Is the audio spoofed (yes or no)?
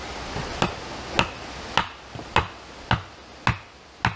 no